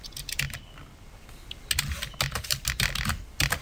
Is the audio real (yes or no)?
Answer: yes